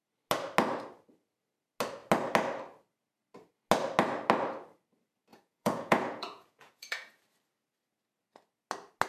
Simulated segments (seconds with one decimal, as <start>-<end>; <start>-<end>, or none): 5.3-7.2

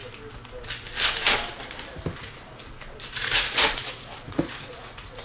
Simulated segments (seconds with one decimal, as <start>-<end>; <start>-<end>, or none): 3.1-5.2

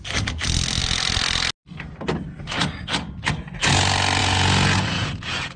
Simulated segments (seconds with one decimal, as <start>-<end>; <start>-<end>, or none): 4.2-5.6

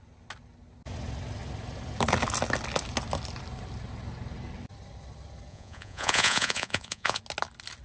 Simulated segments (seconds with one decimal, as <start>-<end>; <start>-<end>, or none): 5.5-7.2

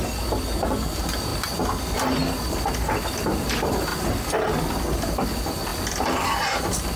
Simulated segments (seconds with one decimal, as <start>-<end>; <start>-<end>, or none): none

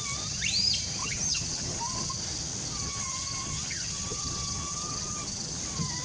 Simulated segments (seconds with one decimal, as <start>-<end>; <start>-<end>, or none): 1.0-2.1; 2.7-5.6